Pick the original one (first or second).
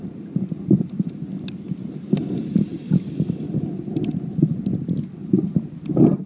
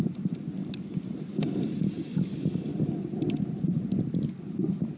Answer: second